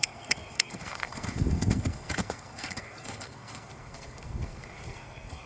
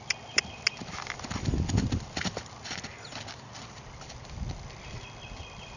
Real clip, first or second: second